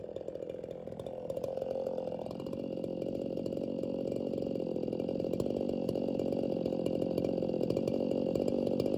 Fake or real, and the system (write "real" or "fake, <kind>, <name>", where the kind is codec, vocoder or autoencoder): real